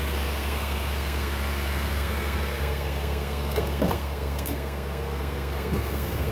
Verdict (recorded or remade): remade